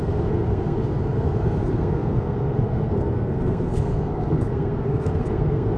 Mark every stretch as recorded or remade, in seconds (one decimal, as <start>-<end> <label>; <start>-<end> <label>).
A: 0.0-5.8 remade